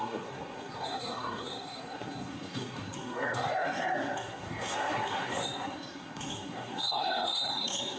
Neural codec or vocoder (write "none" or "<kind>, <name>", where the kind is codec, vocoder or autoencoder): codec, SNAC